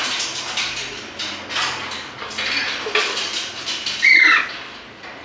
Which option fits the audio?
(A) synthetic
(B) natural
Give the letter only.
B